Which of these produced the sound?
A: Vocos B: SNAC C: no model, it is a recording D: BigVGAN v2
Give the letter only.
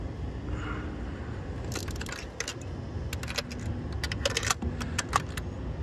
C